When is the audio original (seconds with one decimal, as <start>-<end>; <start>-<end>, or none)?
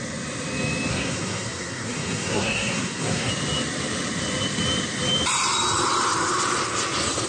0.0-0.9; 3.3-7.3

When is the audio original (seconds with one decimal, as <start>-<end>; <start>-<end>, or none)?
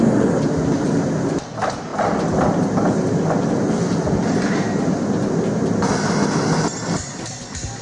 0.0-7.8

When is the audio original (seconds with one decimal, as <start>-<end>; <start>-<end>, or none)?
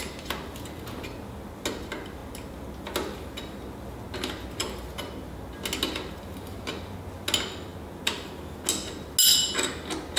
0.0-10.2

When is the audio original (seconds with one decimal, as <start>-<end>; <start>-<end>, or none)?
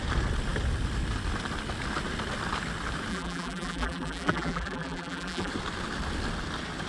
0.0-3.1; 5.5-6.9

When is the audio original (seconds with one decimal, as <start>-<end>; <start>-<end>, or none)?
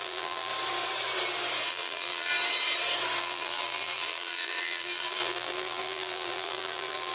0.5-1.7; 2.3-3.2